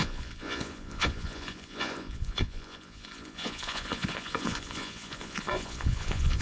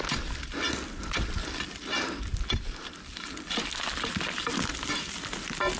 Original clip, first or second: second